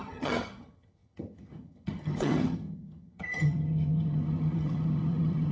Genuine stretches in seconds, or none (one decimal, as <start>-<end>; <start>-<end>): none